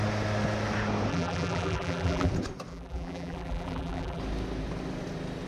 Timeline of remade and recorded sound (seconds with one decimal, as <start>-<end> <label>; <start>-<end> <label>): 0.0-1.1 recorded; 1.1-2.3 remade; 2.3-2.7 recorded; 2.7-4.2 remade; 4.2-5.5 recorded